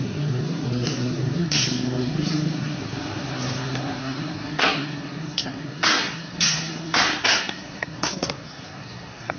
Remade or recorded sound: remade